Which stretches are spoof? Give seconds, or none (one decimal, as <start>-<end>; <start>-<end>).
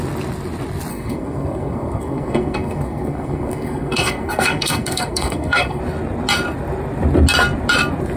0.9-5.8